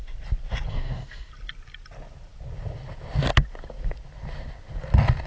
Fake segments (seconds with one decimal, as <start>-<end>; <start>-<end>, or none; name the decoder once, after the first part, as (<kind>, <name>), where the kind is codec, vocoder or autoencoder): 0.7-1.3 (codec, DAC)